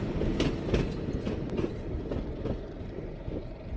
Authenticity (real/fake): real